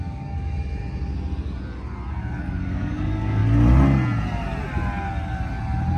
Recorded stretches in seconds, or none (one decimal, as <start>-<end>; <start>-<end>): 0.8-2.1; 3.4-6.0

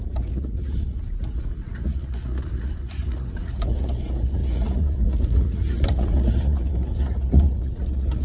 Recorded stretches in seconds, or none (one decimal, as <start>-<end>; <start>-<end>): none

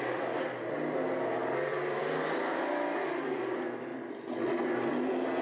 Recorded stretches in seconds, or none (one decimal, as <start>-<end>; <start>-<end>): 0.0-1.4; 2.0-3.9; 4.5-5.4

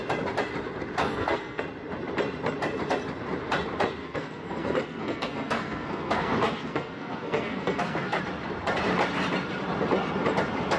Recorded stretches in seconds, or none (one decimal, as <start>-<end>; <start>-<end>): 0.0-1.0; 1.6-4.0; 8.2-10.8

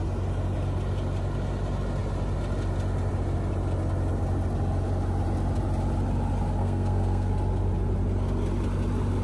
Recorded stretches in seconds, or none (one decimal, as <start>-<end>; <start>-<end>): 0.0-6.6; 7.3-9.2